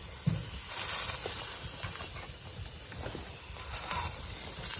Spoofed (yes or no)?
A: no